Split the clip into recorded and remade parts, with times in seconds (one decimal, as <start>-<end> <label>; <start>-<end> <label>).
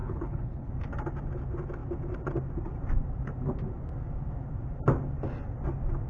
0.0-0.7 remade; 0.7-6.1 recorded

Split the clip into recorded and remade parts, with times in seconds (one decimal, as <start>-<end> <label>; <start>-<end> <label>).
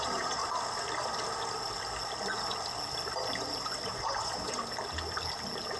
0.0-0.4 remade; 0.4-3.9 recorded; 3.9-4.6 remade; 4.6-5.8 recorded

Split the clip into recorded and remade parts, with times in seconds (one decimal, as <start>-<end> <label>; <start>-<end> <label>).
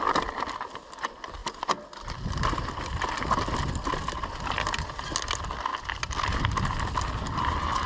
0.0-7.9 recorded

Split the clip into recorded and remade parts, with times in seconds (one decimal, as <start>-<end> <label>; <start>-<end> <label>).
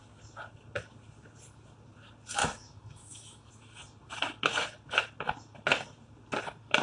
0.0-2.4 recorded; 2.4-3.5 remade; 3.5-6.8 recorded